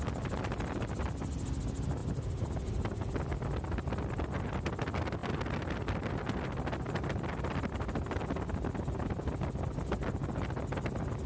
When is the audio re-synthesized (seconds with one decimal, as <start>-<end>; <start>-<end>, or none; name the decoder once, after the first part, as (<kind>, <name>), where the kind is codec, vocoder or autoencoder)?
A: none